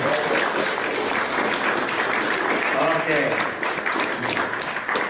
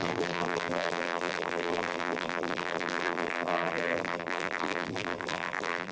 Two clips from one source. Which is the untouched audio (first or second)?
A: first